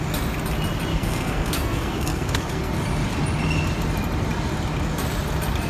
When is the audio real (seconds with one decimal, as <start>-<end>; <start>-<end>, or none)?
0.0-0.9; 2.7-5.7